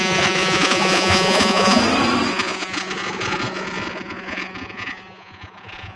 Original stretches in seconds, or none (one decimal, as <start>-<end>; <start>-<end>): 1.8-2.3